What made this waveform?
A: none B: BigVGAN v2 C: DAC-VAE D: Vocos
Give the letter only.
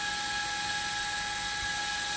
A